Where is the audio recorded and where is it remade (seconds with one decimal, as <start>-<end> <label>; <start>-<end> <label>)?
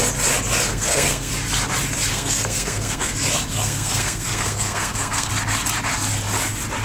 0.0-0.7 recorded; 0.7-1.3 remade; 1.3-2.1 recorded; 2.1-3.1 remade; 3.1-3.5 recorded; 3.5-5.3 remade; 5.3-6.8 recorded